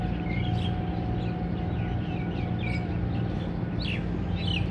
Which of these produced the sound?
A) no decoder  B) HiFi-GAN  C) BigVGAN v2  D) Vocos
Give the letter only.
A